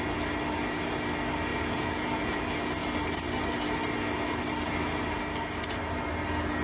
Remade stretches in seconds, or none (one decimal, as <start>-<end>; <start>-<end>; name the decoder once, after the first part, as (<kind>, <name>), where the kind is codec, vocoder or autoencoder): 1.5-2.3 (vocoder, Vocos)